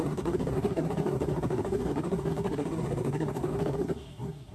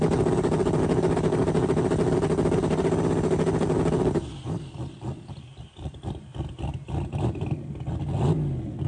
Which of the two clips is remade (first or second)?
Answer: first